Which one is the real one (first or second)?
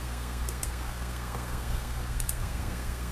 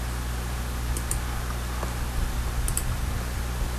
second